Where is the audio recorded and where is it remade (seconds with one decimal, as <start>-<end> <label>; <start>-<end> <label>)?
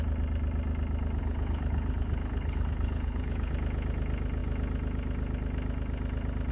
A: 0.0-1.2 recorded; 1.2-3.5 remade; 3.5-6.5 recorded